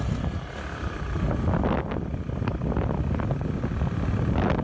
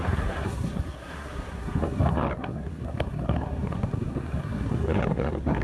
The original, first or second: first